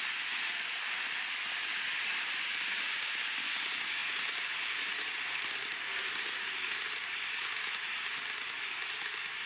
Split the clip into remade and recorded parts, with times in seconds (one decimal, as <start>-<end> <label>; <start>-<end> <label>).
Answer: 0.0-9.5 recorded